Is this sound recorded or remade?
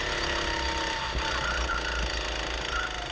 recorded